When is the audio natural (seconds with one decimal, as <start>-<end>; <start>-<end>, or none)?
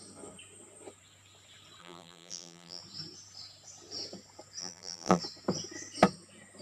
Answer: 0.0-1.8; 2.8-4.6; 5.2-6.6